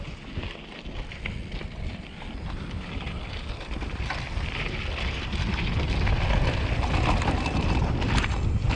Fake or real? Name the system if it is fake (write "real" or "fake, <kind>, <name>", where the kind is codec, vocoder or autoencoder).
real